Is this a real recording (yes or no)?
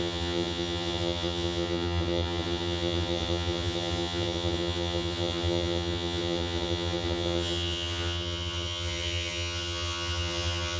no